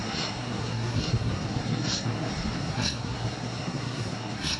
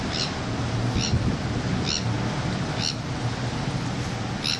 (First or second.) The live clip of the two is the second